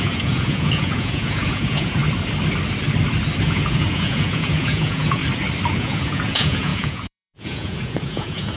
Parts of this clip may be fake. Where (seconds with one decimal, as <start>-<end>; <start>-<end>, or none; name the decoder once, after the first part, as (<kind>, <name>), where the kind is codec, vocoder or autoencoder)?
0.0-2.0 (vocoder, Vocos); 3.4-5.2; 5.8-8.6